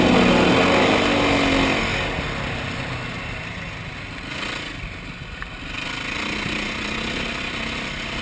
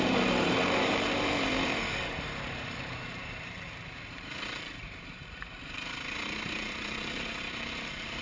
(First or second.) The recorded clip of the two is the first